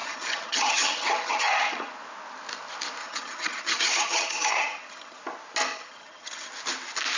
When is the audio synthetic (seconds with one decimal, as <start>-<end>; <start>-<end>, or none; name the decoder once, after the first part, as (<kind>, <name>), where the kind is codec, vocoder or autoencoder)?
0.0-1.9 (vocoder, HiFi-GAN); 3.0-5.2; 5.7-6.5